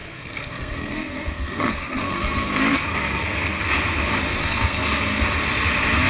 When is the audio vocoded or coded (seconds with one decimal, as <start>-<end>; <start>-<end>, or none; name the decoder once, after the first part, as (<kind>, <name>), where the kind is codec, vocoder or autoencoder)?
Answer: 0.0-3.7 (codec, SNAC); 4.4-5.2